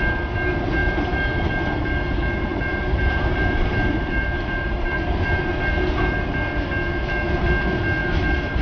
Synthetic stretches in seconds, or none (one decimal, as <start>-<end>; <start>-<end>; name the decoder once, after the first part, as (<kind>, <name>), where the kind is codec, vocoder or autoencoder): 2.5-6.3 (vocoder, BigVGAN v2); 8.0-8.6